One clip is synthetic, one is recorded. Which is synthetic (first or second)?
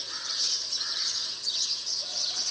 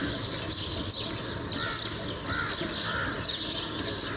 first